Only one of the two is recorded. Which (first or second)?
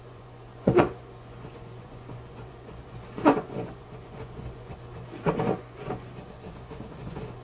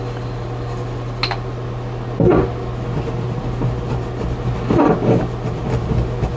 second